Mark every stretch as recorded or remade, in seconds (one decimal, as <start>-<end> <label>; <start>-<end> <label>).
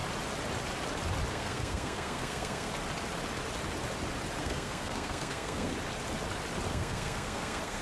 0.0-1.3 recorded; 1.3-2.7 remade; 2.7-4.4 recorded; 4.4-5.7 remade; 5.7-6.7 recorded; 6.7-7.8 remade